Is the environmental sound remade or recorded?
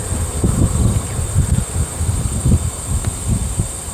recorded